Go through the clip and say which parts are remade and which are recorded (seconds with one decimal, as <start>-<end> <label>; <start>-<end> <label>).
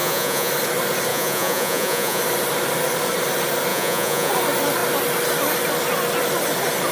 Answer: 0.0-0.5 remade; 0.5-1.1 recorded; 1.1-2.2 remade; 2.2-3.7 recorded; 3.7-4.3 remade; 4.3-6.9 recorded